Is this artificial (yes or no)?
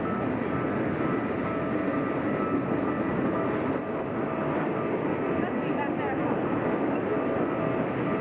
no